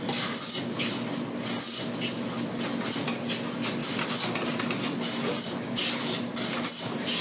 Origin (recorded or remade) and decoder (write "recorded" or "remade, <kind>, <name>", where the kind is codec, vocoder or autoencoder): recorded